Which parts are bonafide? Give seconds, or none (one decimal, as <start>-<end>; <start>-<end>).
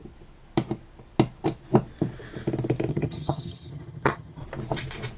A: 0.0-2.9; 4.4-5.2